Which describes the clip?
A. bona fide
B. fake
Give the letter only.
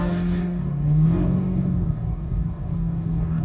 B